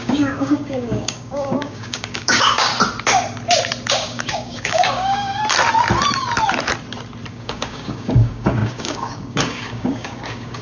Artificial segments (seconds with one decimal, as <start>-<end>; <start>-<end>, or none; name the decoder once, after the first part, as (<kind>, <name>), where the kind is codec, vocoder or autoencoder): 0.0-2.7 (codec, DAC); 3.9-5.4; 7.3-10.6